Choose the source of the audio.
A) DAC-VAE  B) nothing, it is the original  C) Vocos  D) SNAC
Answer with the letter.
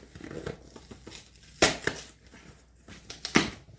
B